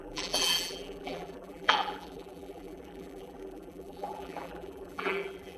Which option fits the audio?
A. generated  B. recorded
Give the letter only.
A